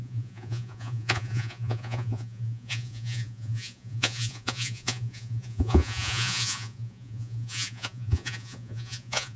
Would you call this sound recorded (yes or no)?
no